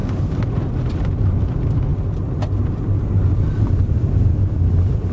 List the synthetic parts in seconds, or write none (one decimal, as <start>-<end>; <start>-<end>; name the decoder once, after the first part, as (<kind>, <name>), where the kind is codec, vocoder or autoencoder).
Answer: 1.9-5.1 (vocoder, BigVGAN v2)